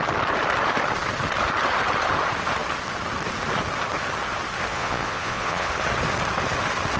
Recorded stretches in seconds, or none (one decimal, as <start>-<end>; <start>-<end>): 0.0-4.7; 5.7-7.0